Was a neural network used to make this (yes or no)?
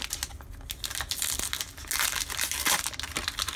no